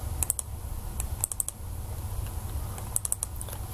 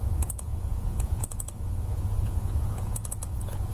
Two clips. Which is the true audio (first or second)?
first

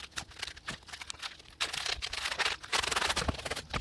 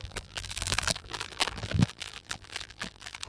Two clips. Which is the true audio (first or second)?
first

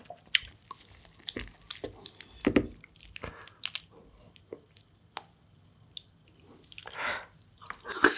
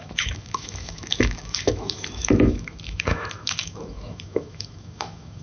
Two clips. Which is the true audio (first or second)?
first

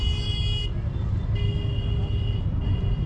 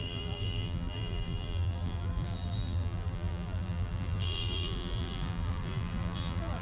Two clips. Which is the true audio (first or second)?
first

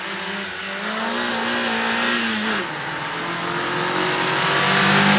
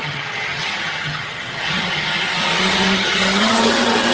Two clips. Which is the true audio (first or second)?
first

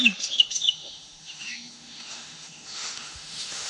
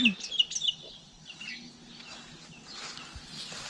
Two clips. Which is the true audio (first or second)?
second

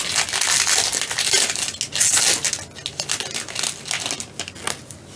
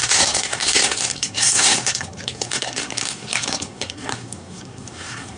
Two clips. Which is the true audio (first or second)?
first